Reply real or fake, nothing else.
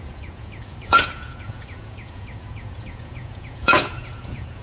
fake